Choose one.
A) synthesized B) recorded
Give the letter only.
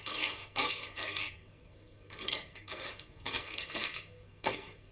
A